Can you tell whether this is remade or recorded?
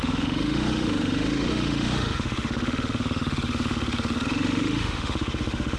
remade